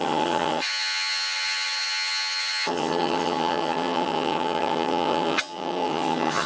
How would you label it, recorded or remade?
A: remade